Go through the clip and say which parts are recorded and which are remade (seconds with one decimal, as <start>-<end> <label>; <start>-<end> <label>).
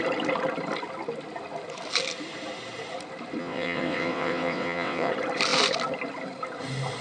0.0-3.4 recorded; 3.4-5.1 remade; 5.1-7.0 recorded